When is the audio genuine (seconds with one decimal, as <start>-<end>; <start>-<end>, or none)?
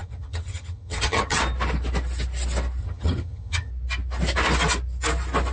1.4-2.8; 3.7-5.5